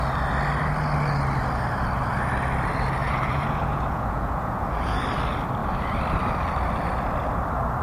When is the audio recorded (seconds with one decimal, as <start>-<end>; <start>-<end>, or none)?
0.0-3.0; 5.0-7.8